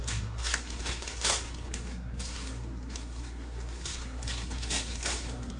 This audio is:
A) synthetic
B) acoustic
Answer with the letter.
A